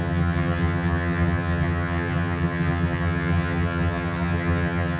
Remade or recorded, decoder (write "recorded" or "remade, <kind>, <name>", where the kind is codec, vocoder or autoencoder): remade, vocoder, HiFi-GAN